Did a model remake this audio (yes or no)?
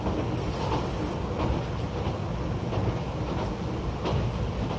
no